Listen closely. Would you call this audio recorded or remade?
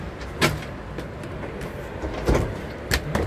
recorded